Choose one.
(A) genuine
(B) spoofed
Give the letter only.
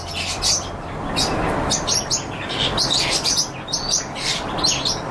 A